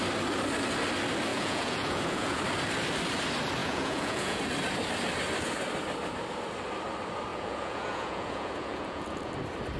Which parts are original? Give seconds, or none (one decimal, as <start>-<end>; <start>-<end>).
0.0-1.3; 2.4-3.6; 4.4-7.3; 9.3-9.8